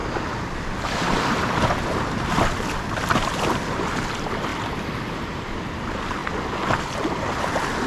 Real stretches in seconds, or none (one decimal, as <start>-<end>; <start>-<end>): 0.0-7.9